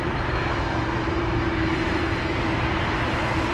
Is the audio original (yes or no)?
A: yes